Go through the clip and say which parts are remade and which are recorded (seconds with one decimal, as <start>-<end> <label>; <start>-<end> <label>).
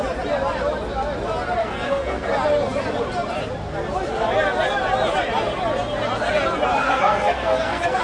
0.0-1.6 recorded; 1.6-2.3 remade; 2.3-6.8 recorded; 6.8-8.0 remade